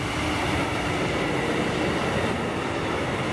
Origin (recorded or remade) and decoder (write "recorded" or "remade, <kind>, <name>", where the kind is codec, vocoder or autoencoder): recorded